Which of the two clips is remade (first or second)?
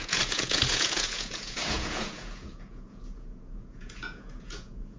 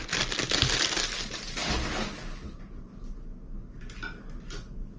first